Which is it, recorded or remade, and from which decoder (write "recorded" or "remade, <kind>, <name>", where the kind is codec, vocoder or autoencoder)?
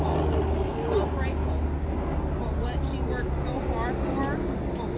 recorded